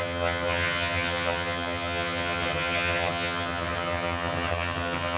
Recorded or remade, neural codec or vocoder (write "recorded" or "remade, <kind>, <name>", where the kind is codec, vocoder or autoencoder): remade, vocoder, HiFi-GAN